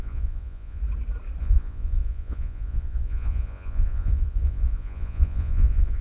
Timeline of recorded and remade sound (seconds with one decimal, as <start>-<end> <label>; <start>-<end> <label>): 0.0-0.8 remade; 0.8-1.4 recorded; 1.4-6.0 remade